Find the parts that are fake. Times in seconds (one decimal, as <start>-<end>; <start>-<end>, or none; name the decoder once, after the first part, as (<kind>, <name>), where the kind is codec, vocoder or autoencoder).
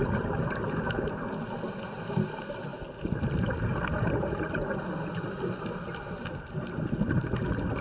none